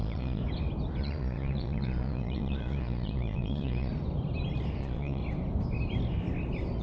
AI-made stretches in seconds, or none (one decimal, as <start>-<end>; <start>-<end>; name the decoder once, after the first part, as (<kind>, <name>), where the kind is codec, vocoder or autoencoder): 0.0-0.4 (vocoder, Vocos); 1.0-3.9; 4.8-5.2

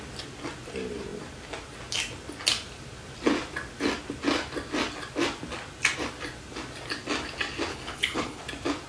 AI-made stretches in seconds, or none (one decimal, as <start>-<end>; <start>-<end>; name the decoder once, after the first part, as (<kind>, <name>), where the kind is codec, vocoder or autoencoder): 7.7-8.4 (codec, HILCodec)

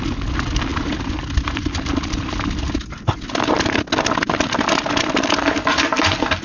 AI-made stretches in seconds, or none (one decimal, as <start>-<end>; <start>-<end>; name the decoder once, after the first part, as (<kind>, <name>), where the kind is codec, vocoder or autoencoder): none

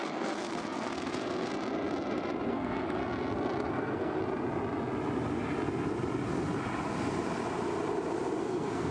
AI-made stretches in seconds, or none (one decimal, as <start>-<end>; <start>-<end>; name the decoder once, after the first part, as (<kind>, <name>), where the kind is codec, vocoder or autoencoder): 0.0-1.5 (codec, SNAC); 2.5-3.0; 3.7-4.2; 8.4-8.9

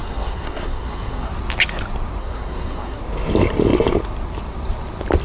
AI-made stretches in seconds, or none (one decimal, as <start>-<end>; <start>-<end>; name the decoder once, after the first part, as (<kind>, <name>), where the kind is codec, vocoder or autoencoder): 0.0-1.3 (codec, SNAC); 2.2-3.0

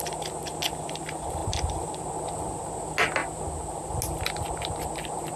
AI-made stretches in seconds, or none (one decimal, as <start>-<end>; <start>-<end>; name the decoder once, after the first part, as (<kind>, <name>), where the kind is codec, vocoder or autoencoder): none